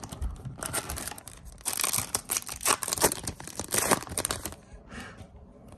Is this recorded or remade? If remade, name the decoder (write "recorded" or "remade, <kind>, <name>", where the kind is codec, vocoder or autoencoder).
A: remade, vocoder, BigVGAN v2